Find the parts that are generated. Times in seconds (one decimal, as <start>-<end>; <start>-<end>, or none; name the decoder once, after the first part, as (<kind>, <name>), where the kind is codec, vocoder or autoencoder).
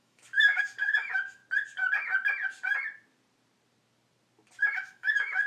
0.0-1.4 (autoencoder, DAC-VAE); 4.6-5.5